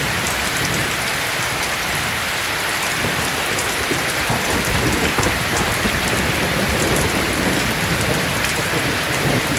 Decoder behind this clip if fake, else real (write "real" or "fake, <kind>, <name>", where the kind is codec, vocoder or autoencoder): fake, vocoder, BigVGAN v2